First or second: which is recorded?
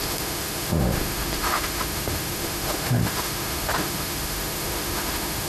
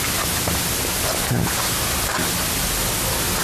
second